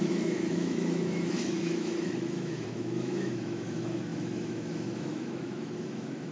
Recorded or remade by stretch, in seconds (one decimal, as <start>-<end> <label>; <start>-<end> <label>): 0.0-6.3 remade